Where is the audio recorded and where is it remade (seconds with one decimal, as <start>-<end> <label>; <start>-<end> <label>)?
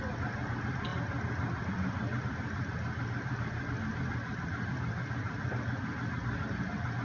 0.0-7.0 recorded